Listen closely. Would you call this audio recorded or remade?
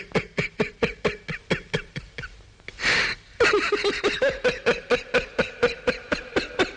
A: recorded